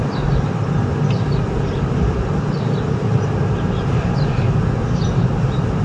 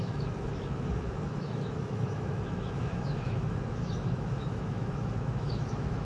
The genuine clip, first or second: first